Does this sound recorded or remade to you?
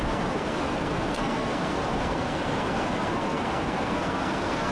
remade